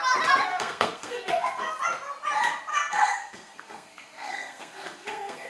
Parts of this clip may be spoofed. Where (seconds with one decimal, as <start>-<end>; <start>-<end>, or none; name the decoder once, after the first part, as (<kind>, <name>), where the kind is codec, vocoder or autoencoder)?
0.5-1.8 (codec, SNAC); 2.7-5.5